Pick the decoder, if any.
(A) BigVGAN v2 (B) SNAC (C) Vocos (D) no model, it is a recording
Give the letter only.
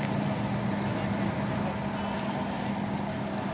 D